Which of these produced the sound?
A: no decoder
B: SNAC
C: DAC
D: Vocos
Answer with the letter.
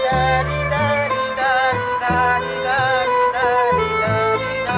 A